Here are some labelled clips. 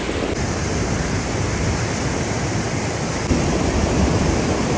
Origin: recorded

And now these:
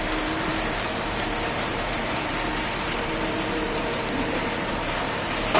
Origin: remade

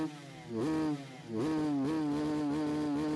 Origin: recorded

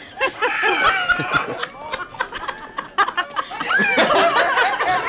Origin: recorded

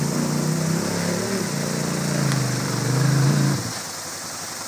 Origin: recorded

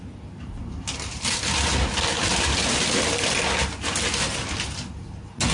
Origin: recorded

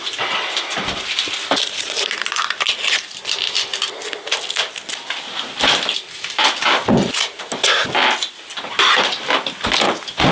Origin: recorded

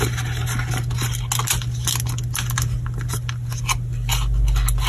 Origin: recorded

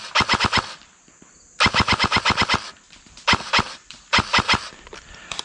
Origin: remade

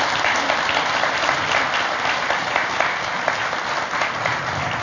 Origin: recorded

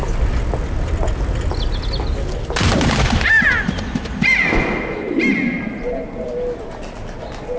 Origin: recorded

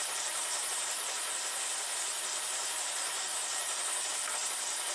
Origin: remade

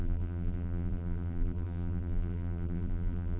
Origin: remade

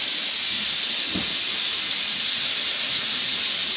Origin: remade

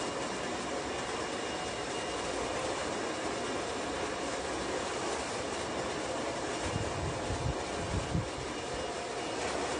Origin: recorded